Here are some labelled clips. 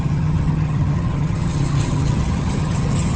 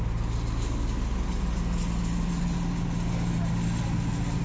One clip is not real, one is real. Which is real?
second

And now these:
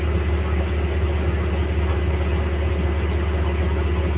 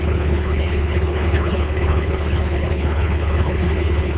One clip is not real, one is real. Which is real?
first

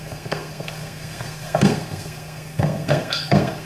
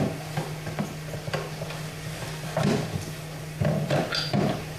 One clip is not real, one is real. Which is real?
second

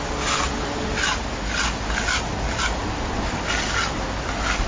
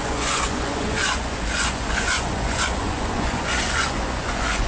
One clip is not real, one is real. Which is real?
first